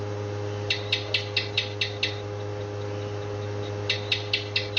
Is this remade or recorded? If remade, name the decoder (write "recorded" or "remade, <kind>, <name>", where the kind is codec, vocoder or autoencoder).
recorded